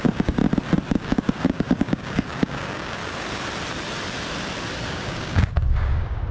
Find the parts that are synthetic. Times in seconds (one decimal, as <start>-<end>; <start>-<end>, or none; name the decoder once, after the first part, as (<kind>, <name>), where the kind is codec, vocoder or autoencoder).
0.0-0.4 (codec, DAC); 0.9-3.0; 4.9-6.3